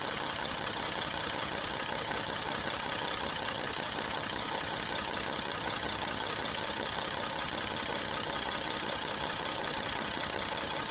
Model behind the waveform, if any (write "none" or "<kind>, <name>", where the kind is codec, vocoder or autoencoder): vocoder, HiFi-GAN